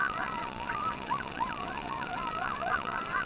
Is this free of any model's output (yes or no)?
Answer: no